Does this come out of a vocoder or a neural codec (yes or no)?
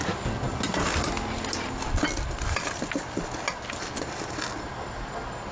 no